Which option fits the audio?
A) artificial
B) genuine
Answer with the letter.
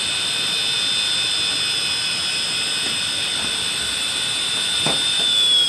B